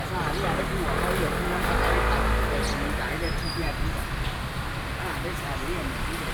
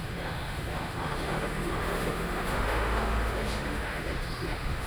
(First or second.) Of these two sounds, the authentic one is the first